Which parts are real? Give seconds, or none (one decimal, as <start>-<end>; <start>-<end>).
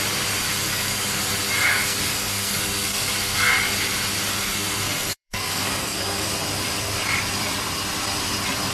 0.0-0.7; 1.2-1.7; 3.5-4.3; 6.3-8.7